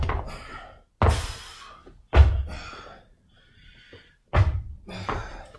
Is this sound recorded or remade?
recorded